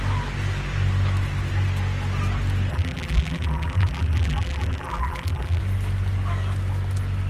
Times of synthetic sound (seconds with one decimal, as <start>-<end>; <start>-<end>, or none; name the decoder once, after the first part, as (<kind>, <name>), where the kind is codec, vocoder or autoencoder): 2.7-5.6 (vocoder, BigVGAN v2)